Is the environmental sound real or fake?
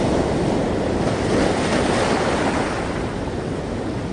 real